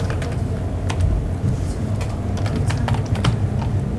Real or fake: real